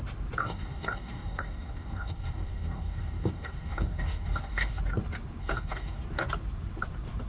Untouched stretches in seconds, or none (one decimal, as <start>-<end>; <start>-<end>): 0.0-0.4; 4.8-5.4; 6.0-7.3